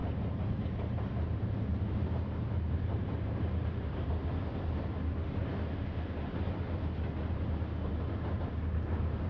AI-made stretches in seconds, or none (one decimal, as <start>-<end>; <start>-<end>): 0.0-4.1